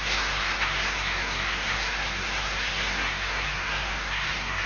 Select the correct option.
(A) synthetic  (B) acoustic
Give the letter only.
A